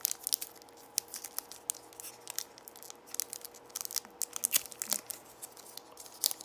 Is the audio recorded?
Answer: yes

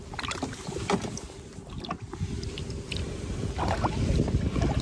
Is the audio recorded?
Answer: yes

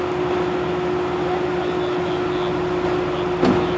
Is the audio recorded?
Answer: yes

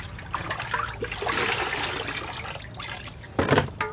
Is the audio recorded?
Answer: yes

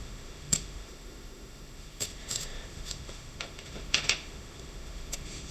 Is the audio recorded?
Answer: no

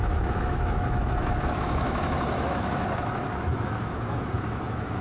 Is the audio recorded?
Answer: no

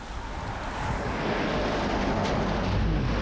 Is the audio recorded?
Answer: yes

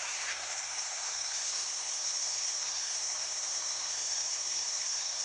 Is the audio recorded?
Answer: no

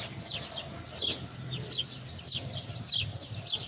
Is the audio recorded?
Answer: yes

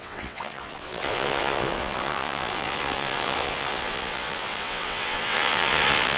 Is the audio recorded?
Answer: no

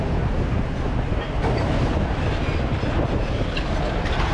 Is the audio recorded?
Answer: yes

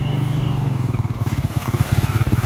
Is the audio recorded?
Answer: no